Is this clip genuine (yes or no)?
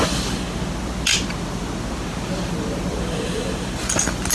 yes